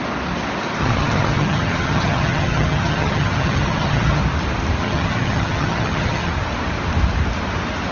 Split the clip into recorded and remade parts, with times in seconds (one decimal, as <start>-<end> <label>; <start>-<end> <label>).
0.0-0.8 recorded; 0.8-4.2 remade; 4.2-4.8 recorded; 4.8-6.3 remade; 6.3-7.9 recorded